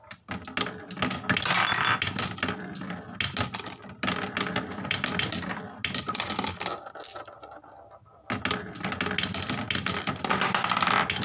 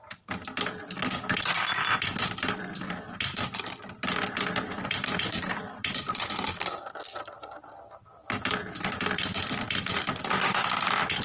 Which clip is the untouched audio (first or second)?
first